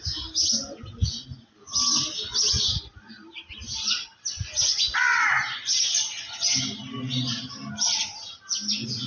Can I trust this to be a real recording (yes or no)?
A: yes